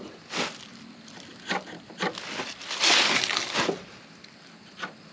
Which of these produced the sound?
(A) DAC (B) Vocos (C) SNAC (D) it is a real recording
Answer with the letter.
D